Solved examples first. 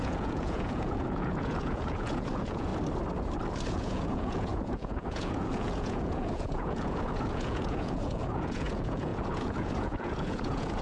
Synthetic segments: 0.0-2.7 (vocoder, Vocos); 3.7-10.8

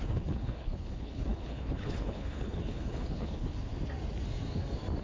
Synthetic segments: 0.0-3.7 (codec, HILCodec)

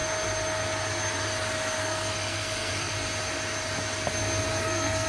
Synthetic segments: 1.8-2.9 (codec, SNAC); 4.6-5.1

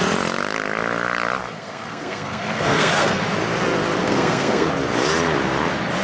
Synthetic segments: 1.4-3.2 (codec, SNAC); 4.0-4.7

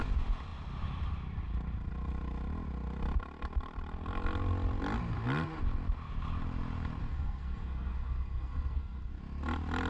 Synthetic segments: 7.0-9.2 (codec, SNAC)

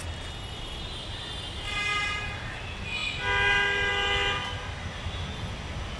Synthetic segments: none

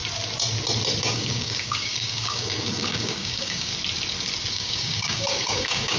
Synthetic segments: 1.0-3.7 (codec, DAC); 4.5-6.0